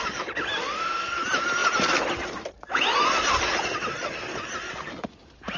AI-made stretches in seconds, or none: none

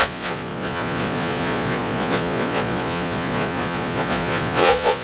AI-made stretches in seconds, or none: 0.0-5.0 (vocoder, Vocos)

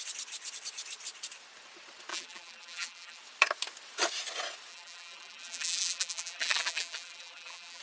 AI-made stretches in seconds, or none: 2.1-3.2 (vocoder, BigVGAN v2); 4.7-7.8

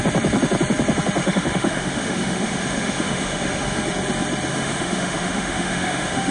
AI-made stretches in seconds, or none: 1.2-3.8 (autoencoder, DAC-VAE); 4.5-6.3

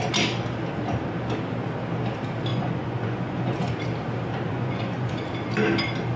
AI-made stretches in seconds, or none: 2.5-3.7 (vocoder, Vocos); 4.5-5.3